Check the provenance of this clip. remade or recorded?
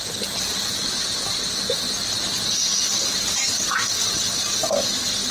recorded